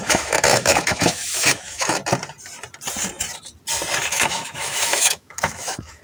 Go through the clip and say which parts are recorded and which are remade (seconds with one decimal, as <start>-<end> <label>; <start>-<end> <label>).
0.0-2.0 remade; 2.0-4.1 recorded; 4.1-6.0 remade